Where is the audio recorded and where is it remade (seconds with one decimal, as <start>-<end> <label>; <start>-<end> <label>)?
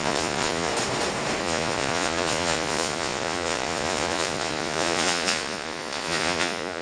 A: 0.0-0.7 remade; 0.7-1.4 recorded; 1.4-6.8 remade